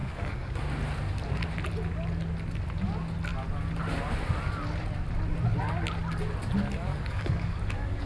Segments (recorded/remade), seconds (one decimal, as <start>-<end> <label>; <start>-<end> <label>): 0.0-0.6 remade; 0.6-6.9 recorded; 6.9-8.1 remade